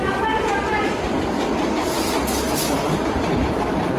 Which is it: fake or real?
real